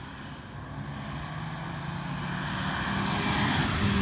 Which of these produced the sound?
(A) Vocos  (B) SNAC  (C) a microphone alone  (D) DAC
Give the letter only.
C